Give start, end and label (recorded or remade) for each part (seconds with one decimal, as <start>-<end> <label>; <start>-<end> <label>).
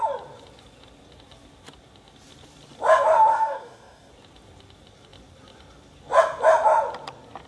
0.0-3.3 recorded; 3.3-4.1 remade; 4.1-7.5 recorded